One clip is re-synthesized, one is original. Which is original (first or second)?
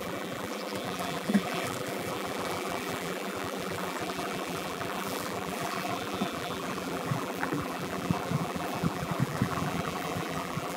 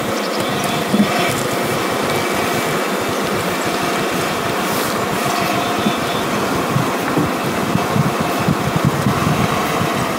second